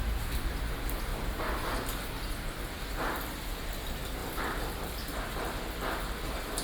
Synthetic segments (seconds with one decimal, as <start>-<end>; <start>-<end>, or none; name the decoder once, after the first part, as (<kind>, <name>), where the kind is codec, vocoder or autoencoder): none